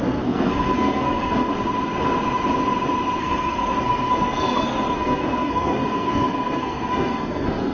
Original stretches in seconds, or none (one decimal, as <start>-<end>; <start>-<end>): 1.5-3.2